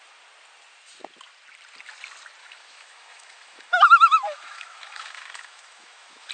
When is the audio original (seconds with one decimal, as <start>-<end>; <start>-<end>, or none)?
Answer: 0.0-2.4